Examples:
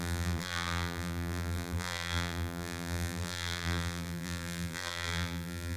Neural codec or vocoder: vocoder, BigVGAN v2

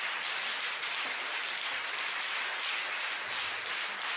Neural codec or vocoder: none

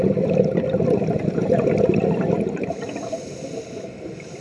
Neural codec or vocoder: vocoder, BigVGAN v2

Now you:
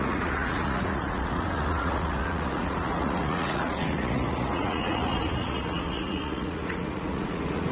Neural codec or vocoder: vocoder, Vocos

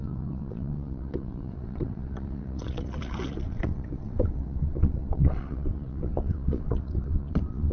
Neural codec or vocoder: vocoder, WaveNeXt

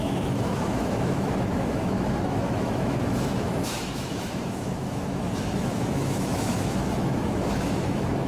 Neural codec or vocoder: autoencoder, DAC-VAE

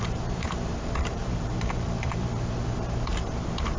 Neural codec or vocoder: vocoder, BigVGAN v2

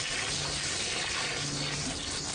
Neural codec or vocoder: none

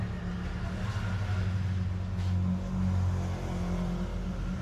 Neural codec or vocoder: none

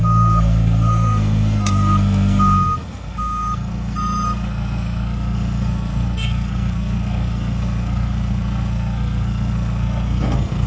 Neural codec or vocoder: codec, SNAC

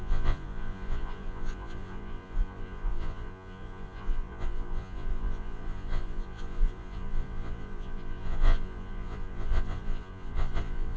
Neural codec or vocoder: vocoder, Vocos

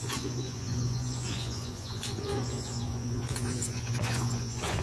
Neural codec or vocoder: vocoder, Vocos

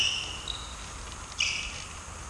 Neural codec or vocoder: none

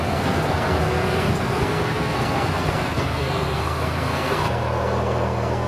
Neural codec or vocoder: codec, SNAC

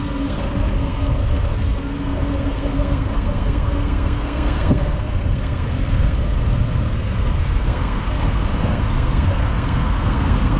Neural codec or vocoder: codec, SNAC